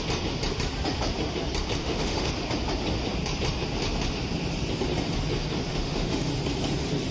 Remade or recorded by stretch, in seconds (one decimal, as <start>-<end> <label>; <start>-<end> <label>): 0.0-1.8 recorded; 1.8-2.3 remade; 2.3-5.7 recorded; 5.7-6.3 remade; 6.3-7.1 recorded

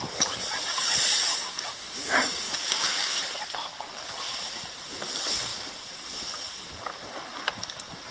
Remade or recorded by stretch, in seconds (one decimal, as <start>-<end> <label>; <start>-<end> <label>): 0.0-1.3 recorded; 1.3-3.2 remade; 3.2-8.1 recorded